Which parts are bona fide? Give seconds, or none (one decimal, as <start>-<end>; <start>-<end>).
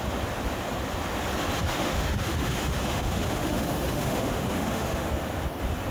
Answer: 0.0-1.6; 5.1-5.9